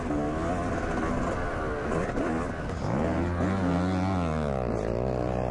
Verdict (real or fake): real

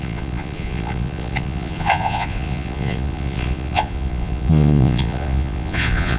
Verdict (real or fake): fake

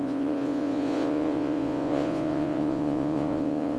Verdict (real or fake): fake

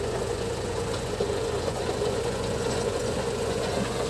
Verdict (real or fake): fake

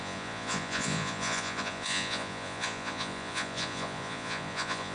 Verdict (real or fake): fake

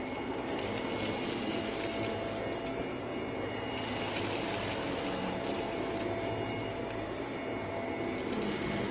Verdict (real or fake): real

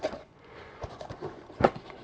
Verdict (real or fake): fake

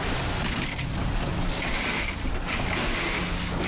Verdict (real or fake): real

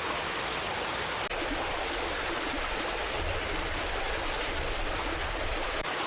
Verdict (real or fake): real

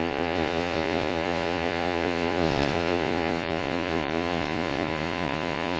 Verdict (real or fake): fake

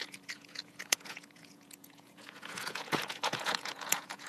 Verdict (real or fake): fake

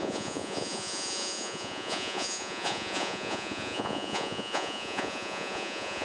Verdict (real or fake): fake